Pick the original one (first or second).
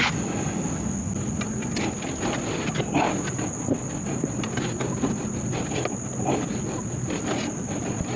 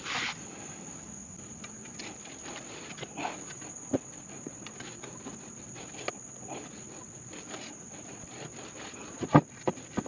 first